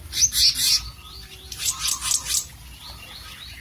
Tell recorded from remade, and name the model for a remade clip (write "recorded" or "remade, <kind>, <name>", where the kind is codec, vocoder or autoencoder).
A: recorded